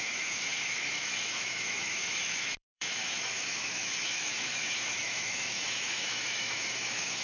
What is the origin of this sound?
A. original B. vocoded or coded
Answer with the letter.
B